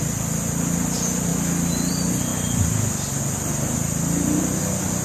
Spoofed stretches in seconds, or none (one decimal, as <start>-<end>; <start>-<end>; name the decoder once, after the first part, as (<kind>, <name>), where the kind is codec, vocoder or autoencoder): none